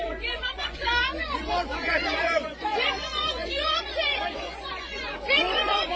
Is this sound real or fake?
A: fake